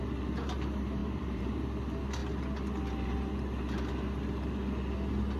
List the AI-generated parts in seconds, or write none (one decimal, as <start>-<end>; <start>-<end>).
1.0-1.5